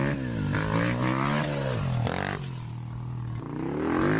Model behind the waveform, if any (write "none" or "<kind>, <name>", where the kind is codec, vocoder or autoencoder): none